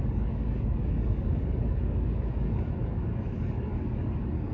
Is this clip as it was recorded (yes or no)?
no